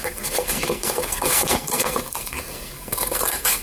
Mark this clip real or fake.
fake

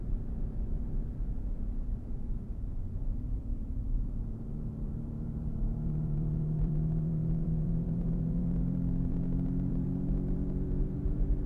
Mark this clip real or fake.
fake